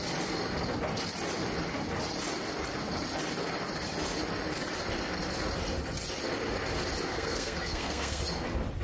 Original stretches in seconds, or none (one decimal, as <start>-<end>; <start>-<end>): 0.0-7.1; 8.2-8.8